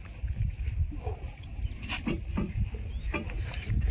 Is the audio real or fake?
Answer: real